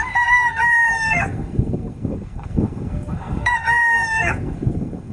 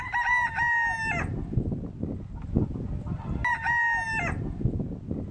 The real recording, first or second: second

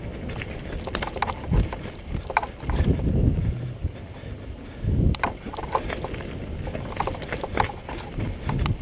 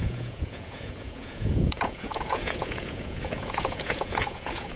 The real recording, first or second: first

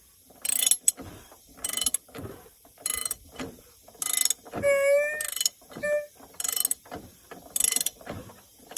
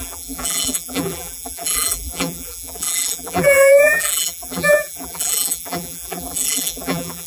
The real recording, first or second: first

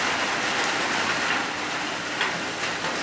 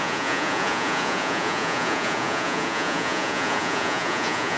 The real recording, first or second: first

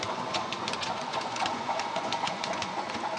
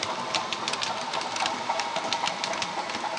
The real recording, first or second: second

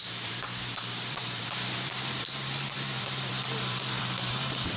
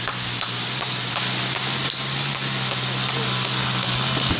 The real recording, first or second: second